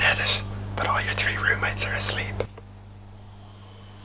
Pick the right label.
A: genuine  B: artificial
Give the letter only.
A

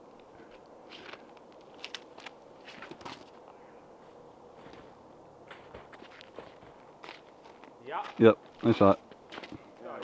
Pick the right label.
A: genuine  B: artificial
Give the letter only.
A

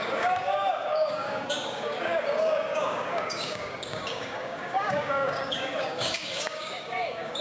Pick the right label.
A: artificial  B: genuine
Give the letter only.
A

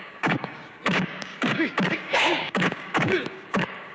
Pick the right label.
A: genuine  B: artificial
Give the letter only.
B